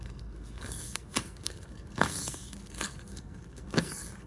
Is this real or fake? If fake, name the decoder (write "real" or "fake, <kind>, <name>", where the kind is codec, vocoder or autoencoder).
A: fake, codec, SNAC